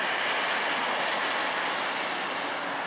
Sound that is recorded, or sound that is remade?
recorded